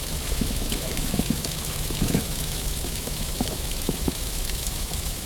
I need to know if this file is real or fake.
fake